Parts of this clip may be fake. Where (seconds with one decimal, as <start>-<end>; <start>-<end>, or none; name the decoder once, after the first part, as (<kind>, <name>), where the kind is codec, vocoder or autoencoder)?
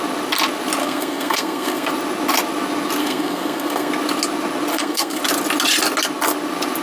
0.8-1.9 (codec, SNAC); 3.0-3.9; 4.7-5.2